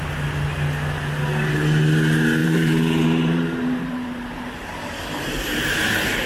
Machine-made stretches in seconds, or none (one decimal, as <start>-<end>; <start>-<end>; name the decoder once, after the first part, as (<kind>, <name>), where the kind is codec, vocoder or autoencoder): 2.4-6.3 (vocoder, BigVGAN v2)